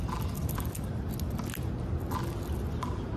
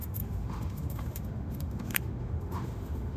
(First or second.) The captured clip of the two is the first